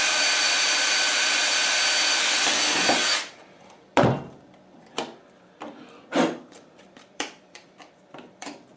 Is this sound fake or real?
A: fake